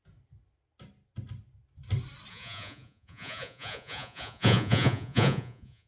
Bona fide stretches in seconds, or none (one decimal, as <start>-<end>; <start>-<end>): 0.0-2.3